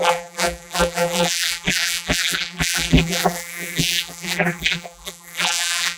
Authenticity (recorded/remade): remade